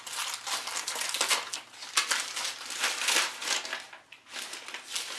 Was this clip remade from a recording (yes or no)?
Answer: no